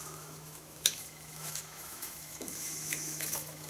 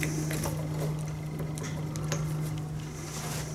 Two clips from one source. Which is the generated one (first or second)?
first